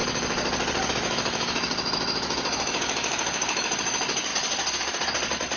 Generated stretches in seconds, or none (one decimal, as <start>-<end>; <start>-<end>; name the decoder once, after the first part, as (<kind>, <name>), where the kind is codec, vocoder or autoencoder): 0.9-4.3 (autoencoder, DAC-VAE)